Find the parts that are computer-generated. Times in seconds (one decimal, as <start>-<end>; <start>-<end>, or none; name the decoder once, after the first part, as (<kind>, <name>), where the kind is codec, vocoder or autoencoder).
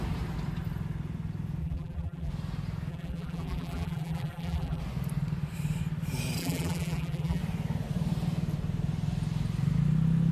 1.6-2.3 (vocoder, BigVGAN v2); 2.9-4.8; 6.4-7.4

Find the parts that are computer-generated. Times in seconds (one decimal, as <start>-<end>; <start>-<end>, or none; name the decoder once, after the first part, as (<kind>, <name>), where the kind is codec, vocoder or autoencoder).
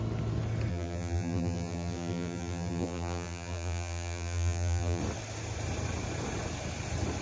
0.7-5.0 (vocoder, BigVGAN v2)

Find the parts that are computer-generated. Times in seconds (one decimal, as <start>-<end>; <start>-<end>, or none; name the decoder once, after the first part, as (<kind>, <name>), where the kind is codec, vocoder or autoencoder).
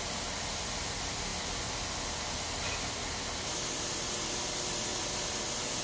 none